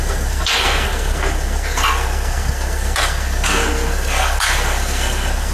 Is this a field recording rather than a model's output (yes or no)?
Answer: no